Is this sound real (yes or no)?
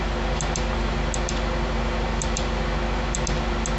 yes